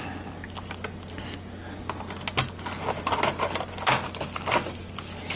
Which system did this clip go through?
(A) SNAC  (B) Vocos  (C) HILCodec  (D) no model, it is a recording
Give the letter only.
D